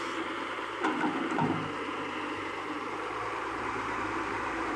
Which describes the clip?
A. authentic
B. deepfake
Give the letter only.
B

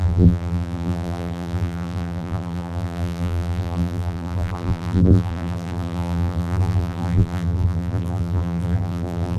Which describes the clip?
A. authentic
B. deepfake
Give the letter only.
B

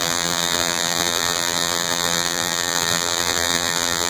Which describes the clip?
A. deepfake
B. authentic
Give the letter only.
A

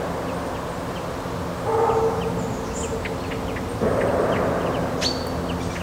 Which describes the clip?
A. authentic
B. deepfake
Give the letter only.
A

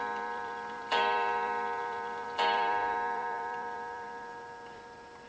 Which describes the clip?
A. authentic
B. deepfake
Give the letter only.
B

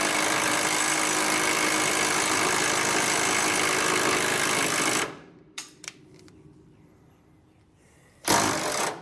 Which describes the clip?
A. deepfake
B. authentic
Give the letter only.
A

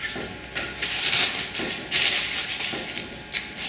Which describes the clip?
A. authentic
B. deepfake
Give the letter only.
A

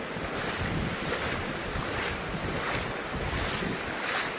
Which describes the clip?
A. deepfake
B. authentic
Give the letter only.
B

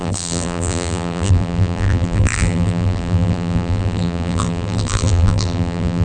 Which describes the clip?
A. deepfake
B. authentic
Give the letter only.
A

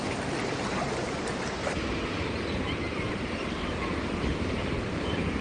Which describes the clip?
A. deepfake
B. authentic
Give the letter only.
A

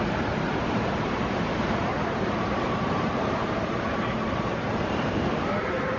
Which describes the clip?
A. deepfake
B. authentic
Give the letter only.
A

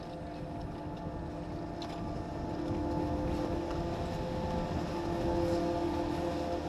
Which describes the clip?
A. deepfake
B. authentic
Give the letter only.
B